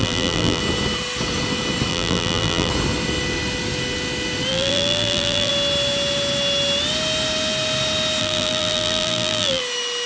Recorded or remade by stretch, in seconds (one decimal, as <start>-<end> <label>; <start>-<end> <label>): 0.0-0.6 remade; 0.6-1.9 recorded; 1.9-2.7 remade; 2.7-4.5 recorded; 4.5-5.5 remade; 5.5-8.2 recorded; 8.2-9.6 remade; 9.6-10.1 recorded